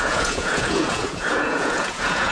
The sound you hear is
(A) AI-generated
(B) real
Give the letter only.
A